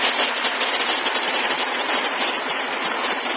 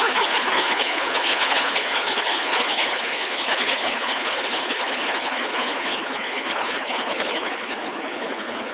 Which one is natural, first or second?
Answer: first